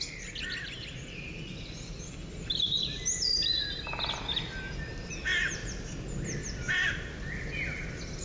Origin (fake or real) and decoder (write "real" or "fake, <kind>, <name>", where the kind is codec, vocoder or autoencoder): real